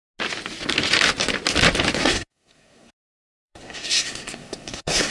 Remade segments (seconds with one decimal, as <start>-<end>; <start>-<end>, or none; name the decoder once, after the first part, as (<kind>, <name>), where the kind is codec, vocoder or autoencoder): 2.0-5.1 (codec, SNAC)